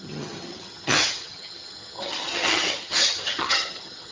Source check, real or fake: fake